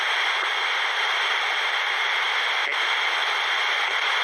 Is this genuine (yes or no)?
no